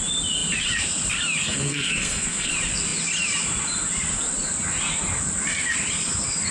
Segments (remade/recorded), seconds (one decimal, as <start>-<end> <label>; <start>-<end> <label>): 0.0-1.4 recorded; 1.4-2.5 remade; 2.5-6.5 recorded